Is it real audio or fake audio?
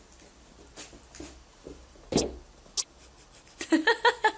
real